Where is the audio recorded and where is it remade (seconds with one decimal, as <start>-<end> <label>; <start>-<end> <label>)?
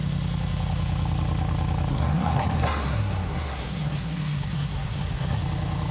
0.0-1.9 recorded; 1.9-5.4 remade; 5.4-5.9 recorded